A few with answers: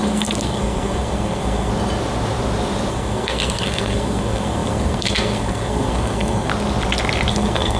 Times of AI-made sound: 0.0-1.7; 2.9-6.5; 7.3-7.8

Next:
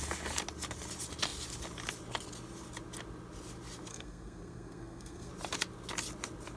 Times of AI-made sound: 3.9-5.3